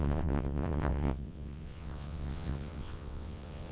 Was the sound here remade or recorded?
remade